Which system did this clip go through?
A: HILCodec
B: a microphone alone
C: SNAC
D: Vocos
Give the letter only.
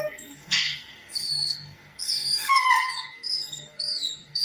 C